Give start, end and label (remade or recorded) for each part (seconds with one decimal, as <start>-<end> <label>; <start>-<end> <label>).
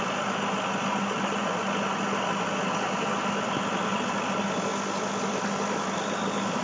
0.0-6.6 recorded